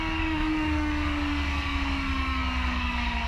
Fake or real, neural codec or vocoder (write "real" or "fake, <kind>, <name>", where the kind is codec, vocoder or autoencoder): fake, codec, DAC